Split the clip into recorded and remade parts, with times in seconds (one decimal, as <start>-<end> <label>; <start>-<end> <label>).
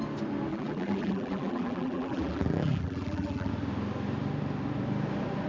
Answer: 0.0-0.5 recorded; 0.5-3.5 remade; 3.5-5.5 recorded